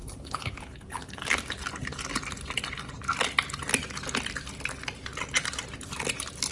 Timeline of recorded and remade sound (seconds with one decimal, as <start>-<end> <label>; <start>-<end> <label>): 0.0-1.2 remade; 1.2-6.5 recorded